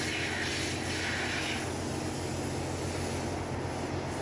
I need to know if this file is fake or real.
real